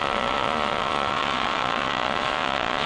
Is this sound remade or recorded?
remade